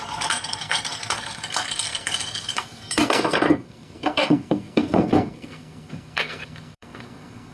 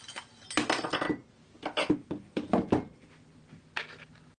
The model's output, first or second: first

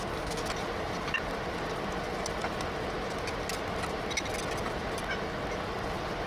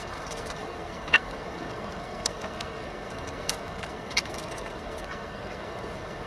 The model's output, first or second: second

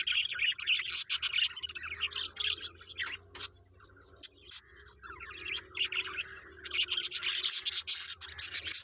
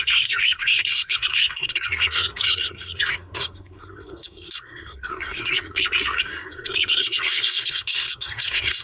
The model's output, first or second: second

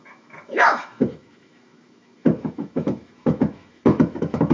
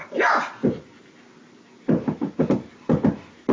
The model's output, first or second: first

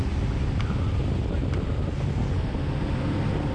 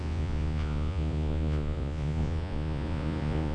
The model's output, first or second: second